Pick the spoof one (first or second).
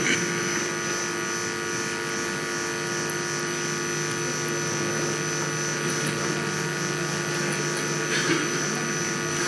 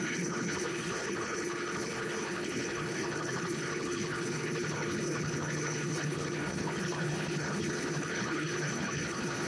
second